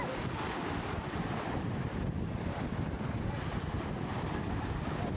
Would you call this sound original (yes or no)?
yes